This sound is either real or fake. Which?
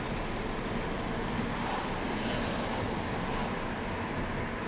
real